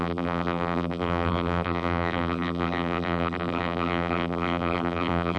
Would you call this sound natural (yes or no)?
no